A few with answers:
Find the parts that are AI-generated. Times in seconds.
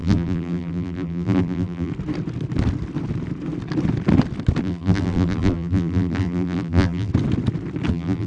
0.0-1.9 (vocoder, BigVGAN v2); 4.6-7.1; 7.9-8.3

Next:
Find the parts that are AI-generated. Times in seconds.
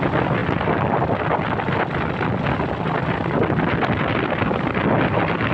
none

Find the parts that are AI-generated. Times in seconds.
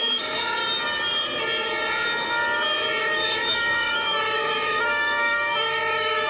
0.0-0.6 (autoencoder, DAC-VAE); 3.0-6.3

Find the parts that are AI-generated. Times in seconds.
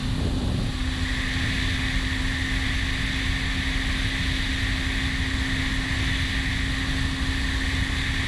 none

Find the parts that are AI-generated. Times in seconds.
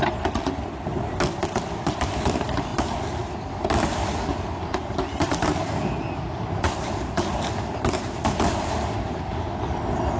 none